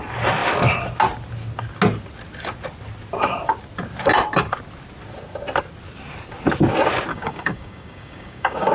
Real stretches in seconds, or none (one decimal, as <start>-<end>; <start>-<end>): 0.0-7.1